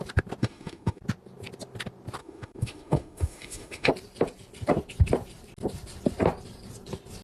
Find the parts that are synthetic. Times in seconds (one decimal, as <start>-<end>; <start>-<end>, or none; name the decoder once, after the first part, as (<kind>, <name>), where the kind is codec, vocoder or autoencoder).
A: 0.4-1.0 (autoencoder, DAC-VAE); 2.2-3.9